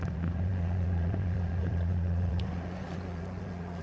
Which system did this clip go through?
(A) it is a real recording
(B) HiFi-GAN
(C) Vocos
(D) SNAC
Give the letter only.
C